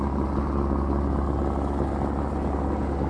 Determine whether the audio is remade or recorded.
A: recorded